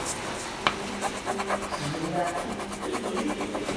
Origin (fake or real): real